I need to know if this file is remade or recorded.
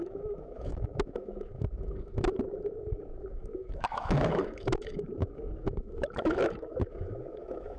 remade